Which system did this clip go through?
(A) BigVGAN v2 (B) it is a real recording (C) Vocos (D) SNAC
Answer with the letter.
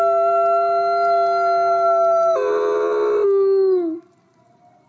B